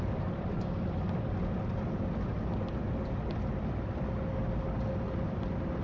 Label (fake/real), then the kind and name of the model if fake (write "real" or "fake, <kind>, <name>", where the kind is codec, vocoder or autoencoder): real